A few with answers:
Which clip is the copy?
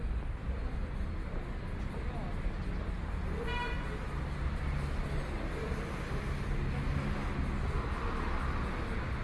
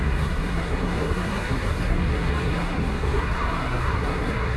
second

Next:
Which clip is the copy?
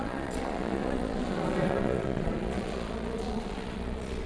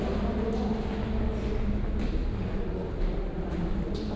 first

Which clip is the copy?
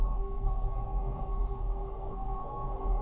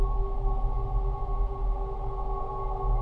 first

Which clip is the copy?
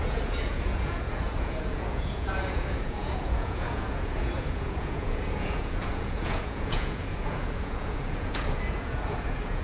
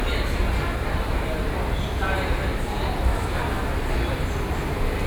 first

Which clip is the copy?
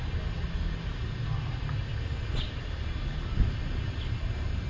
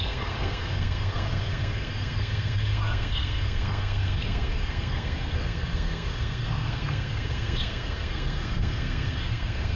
second